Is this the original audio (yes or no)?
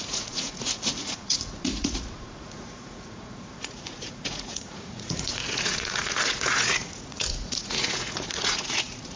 no